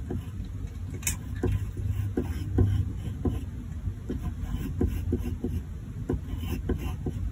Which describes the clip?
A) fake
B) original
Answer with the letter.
B